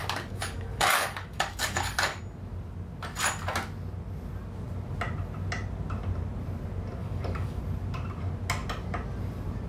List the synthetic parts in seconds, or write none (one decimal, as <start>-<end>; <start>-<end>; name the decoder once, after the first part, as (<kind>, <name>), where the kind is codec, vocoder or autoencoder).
0.0-2.2 (codec, DAC); 7.0-7.6